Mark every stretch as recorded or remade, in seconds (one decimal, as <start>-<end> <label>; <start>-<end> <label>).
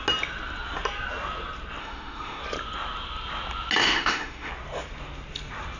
0.0-1.8 recorded; 1.8-2.4 remade; 2.4-3.8 recorded; 3.8-4.5 remade; 4.5-5.8 recorded